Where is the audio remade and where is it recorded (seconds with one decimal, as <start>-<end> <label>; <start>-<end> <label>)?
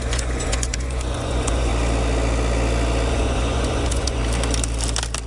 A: 0.0-1.7 remade; 1.7-3.1 recorded; 3.1-4.2 remade; 4.2-5.3 recorded